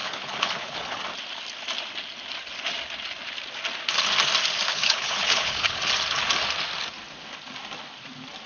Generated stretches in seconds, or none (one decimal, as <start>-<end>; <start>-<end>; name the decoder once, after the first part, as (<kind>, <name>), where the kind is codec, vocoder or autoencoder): 0.0-1.0 (codec, HILCodec); 4.7-5.8